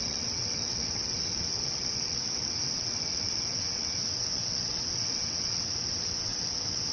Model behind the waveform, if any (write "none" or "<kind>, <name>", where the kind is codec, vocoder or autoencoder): vocoder, WaveNeXt